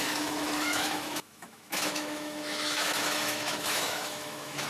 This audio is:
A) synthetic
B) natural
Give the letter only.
A